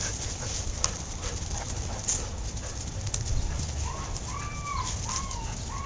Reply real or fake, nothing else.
real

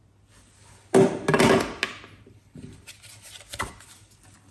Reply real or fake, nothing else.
real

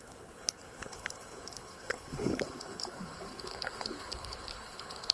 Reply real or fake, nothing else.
fake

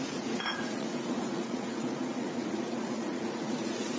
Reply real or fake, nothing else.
fake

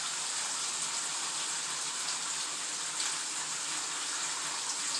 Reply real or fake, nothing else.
real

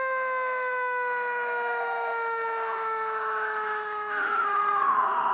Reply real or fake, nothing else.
fake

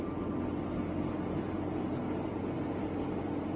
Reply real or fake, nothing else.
real